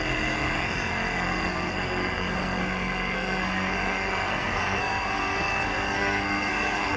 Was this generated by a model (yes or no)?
yes